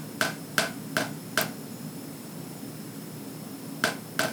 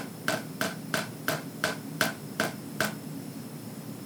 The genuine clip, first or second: first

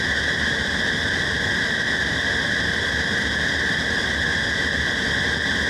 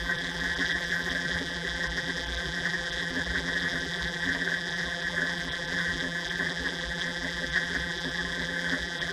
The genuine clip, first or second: first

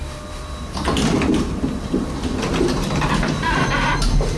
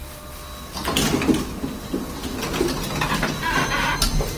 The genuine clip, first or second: second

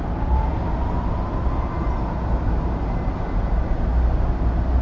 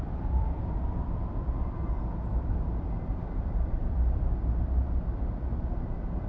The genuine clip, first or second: first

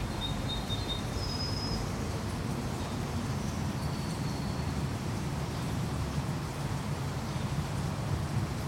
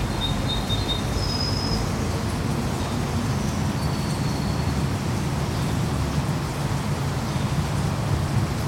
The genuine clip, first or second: second